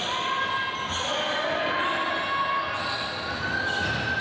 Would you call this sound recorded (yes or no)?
yes